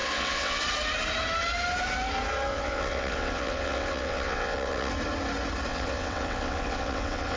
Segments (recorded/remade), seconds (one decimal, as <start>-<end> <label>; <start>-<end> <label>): 0.0-0.6 remade; 0.6-2.5 recorded; 2.5-4.9 remade; 4.9-5.7 recorded; 5.7-7.4 remade